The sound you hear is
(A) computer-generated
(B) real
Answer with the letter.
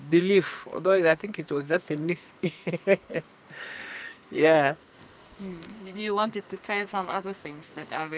A